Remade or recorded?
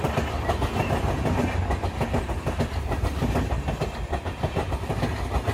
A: recorded